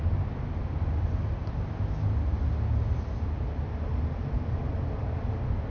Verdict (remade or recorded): recorded